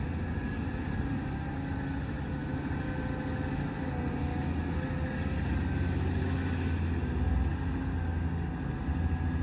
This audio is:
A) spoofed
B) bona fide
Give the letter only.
B